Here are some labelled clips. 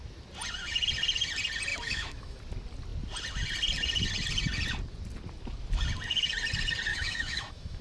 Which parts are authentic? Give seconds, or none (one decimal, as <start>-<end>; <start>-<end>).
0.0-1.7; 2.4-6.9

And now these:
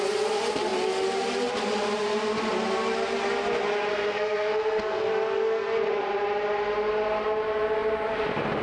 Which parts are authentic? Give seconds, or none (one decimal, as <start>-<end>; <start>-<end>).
0.0-3.9; 5.1-8.6

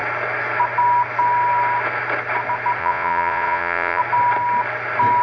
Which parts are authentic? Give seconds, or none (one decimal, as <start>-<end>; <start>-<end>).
0.0-2.8; 4.0-5.2

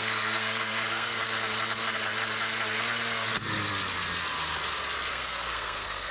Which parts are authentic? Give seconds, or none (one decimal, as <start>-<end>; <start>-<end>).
1.2-5.1

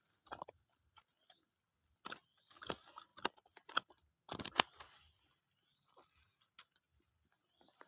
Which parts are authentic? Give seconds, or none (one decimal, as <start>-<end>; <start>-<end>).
0.0-7.9